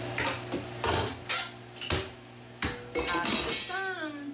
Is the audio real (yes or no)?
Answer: yes